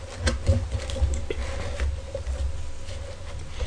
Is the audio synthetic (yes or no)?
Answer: no